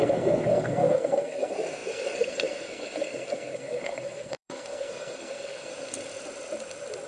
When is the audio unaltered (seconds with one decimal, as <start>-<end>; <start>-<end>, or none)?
5.7-7.1